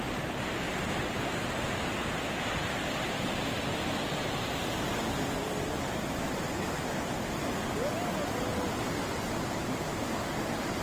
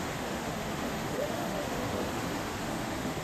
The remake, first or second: second